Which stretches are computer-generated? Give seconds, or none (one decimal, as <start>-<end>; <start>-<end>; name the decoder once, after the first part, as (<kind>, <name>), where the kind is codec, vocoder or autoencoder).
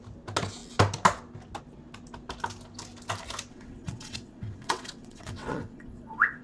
3.5-6.4 (vocoder, WaveNeXt)